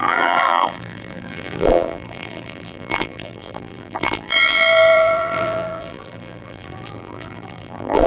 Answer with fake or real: fake